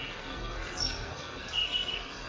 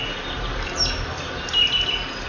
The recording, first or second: second